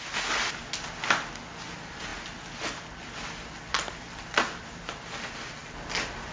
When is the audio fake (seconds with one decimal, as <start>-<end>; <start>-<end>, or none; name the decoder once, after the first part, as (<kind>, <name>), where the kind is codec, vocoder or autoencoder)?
none